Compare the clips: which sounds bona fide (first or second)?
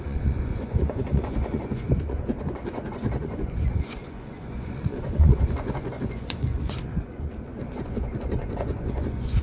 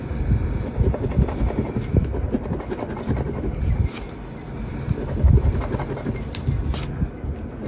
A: second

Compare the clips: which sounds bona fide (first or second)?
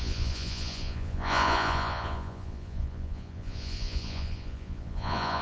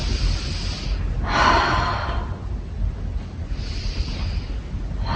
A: second